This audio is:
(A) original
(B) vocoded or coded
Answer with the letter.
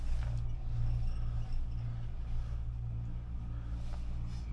A